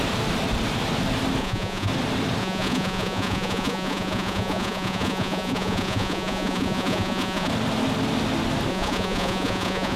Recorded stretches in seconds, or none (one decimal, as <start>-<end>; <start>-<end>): 0.0-1.4; 1.9-2.4; 7.5-8.7